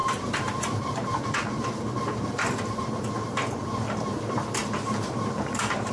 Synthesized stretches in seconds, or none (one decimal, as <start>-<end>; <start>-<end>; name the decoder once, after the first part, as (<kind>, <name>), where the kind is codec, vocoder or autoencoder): 0.0-3.0 (vocoder, BigVGAN v2); 4.6-5.9